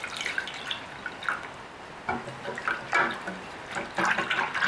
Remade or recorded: recorded